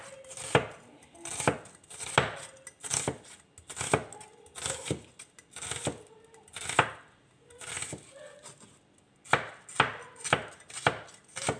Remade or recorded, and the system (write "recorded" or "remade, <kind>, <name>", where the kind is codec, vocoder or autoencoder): recorded